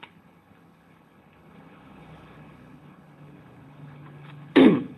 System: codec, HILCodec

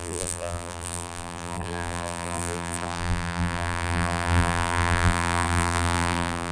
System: vocoder, BigVGAN v2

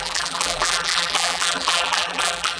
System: vocoder, BigVGAN v2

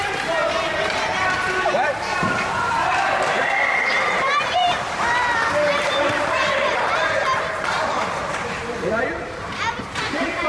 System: vocoder, BigVGAN v2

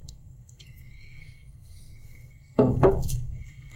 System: codec, SNAC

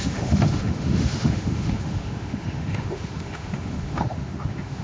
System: autoencoder, DAC-VAE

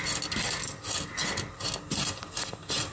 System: none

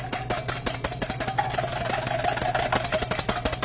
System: none